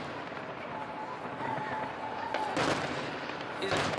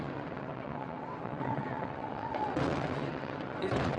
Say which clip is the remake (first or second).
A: second